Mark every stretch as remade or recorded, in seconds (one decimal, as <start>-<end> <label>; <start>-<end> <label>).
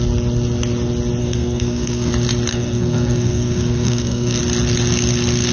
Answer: 0.0-1.2 recorded; 1.2-2.1 remade; 2.1-2.5 recorded; 2.5-4.4 remade; 4.4-5.5 recorded